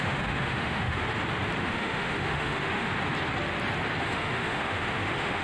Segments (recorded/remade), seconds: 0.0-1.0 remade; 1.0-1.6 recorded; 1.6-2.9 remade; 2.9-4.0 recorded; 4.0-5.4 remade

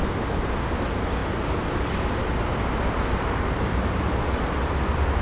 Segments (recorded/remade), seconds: 0.0-5.2 recorded

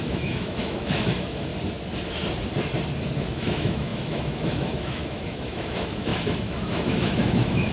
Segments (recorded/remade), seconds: 0.0-1.5 remade; 1.5-3.2 recorded; 3.2-7.7 remade

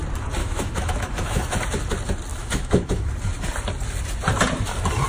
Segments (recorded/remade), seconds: 0.0-0.4 recorded; 0.4-1.4 remade; 1.4-2.3 recorded; 2.3-3.1 remade; 3.1-5.1 recorded

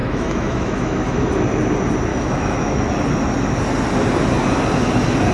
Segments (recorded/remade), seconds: 0.0-1.3 remade; 1.3-2.1 recorded; 2.1-2.9 remade; 2.9-5.3 recorded

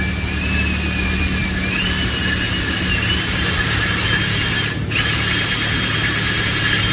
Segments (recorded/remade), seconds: 0.0-6.9 recorded

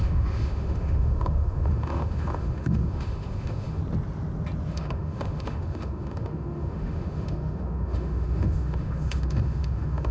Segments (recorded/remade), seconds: 0.0-3.8 remade; 3.8-4.7 recorded; 4.7-10.1 remade